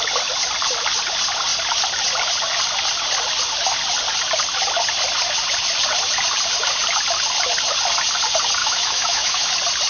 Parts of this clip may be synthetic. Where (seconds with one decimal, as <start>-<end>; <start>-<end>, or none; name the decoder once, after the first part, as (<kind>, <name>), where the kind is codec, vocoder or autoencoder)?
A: 8.6-9.5 (autoencoder, DAC-VAE)

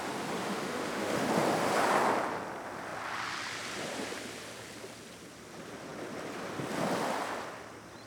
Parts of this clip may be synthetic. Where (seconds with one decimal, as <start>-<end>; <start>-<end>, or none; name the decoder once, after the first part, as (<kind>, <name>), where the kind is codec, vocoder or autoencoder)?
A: 0.4-1.3 (autoencoder, DAC-VAE)